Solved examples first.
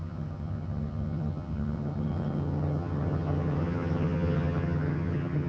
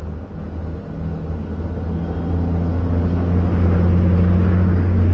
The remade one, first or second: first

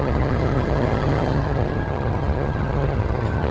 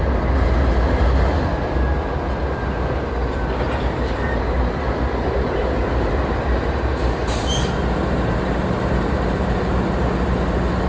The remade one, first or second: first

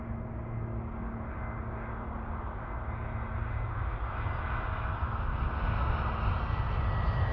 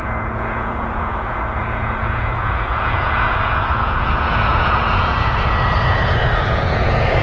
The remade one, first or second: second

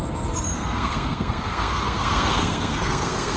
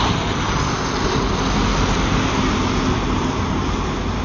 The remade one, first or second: first